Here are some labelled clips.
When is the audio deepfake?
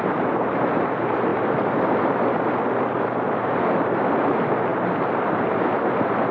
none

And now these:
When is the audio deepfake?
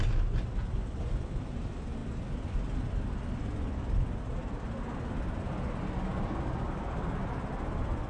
none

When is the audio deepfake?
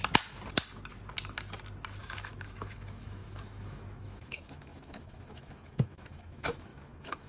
2.0-7.3 (autoencoder, DAC-VAE)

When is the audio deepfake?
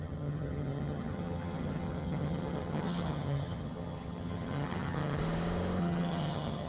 0.0-5.2 (vocoder, HiFi-GAN); 5.8-6.7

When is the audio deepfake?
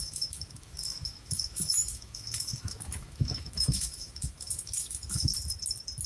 0.0-5.3 (autoencoder, DAC-VAE)